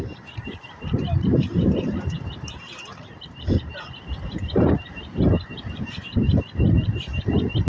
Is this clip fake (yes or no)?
yes